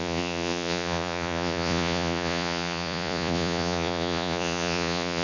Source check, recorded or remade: remade